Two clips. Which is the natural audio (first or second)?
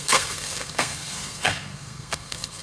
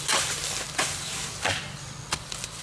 second